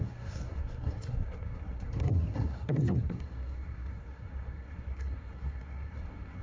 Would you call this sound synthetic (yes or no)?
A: yes